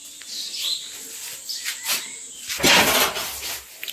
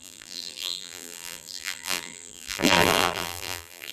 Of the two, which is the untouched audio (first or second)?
first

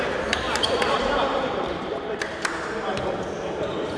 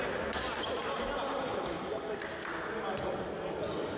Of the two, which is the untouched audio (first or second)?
second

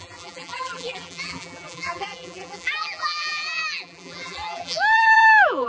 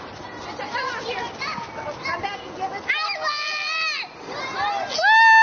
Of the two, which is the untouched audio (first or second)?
second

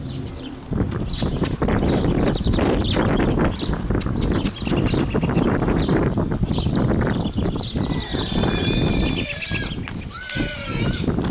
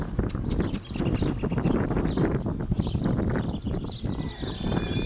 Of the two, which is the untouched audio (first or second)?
second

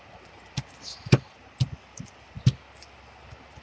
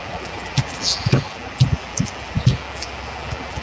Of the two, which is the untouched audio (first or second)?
first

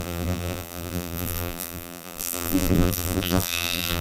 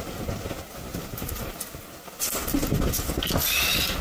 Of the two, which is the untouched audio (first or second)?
second